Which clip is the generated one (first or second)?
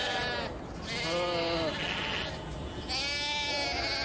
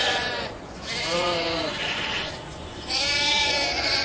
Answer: second